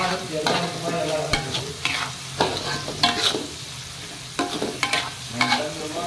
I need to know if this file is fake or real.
real